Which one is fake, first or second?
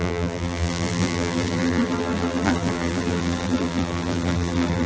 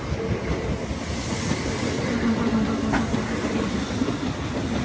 first